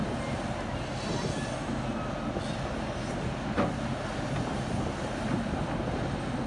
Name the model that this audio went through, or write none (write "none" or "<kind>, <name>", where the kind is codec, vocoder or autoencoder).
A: none